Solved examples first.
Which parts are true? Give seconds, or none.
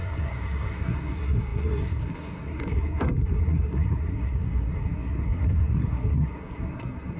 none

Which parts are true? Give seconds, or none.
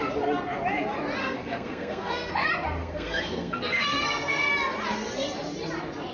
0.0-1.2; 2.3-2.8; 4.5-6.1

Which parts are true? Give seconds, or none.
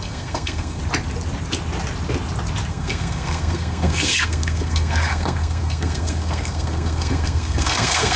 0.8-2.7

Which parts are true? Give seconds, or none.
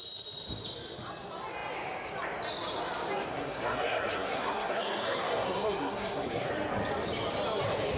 0.0-3.3; 6.5-8.0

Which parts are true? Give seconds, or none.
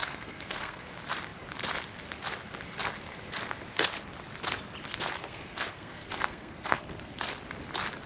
0.8-5.2; 7.2-8.1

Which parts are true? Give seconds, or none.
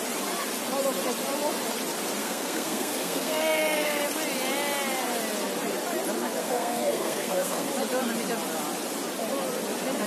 0.0-2.2; 4.0-6.4; 7.7-10.1